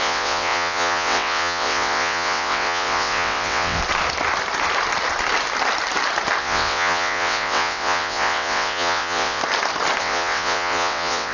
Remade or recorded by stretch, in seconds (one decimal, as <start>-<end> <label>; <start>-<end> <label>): 0.0-3.8 remade; 3.8-6.4 recorded; 6.4-9.4 remade; 9.4-10.0 recorded; 10.0-11.3 remade